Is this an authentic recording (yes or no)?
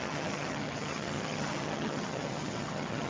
no